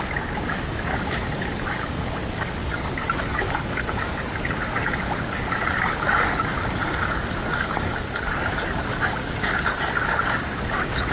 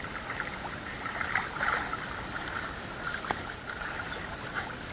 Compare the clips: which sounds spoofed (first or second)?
first